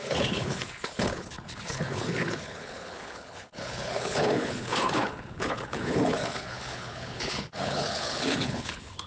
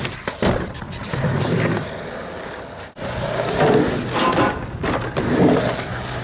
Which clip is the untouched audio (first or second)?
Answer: second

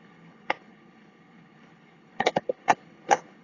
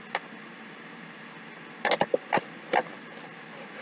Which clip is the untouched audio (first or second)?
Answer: second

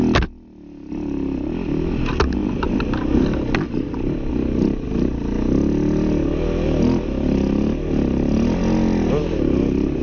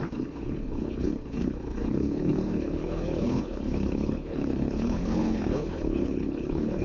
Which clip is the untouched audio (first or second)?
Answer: first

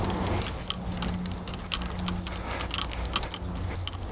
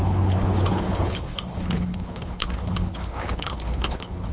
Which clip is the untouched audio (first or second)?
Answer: first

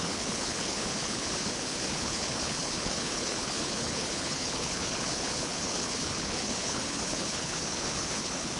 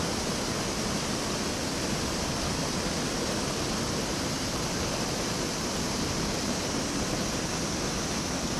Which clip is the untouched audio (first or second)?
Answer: second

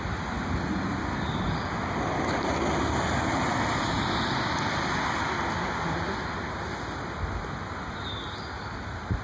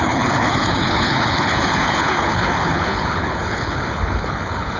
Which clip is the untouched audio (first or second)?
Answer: first